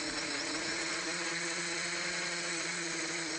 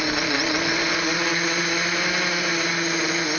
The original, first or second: second